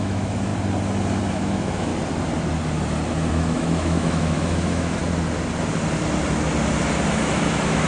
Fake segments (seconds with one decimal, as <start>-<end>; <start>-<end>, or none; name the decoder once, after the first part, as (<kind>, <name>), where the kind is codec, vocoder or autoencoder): 0.0-0.5 (autoencoder, DAC-VAE); 1.3-1.9; 3.3-5.0; 7.1-7.9